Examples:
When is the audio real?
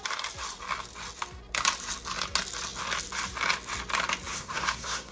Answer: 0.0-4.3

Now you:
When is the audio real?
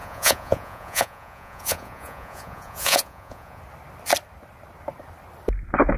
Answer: 3.6-6.0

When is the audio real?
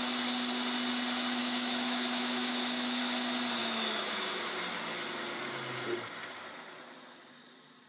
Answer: 0.0-1.4; 3.0-3.6; 4.4-7.9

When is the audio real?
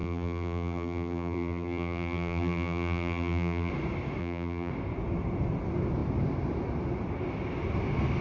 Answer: 3.7-4.2; 4.7-8.2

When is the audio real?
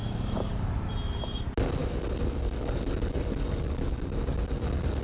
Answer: 0.7-1.8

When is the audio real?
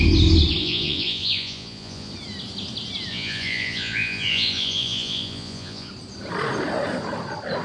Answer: 0.0-0.6; 2.1-3.1; 5.9-7.6